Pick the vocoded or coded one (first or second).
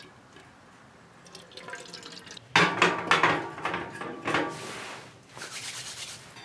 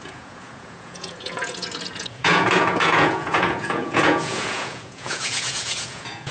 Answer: second